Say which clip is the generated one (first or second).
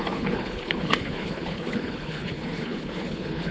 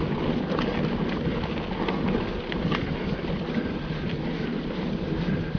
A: first